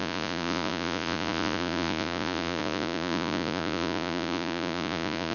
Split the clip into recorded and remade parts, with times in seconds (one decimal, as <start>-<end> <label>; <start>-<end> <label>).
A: 0.0-5.3 remade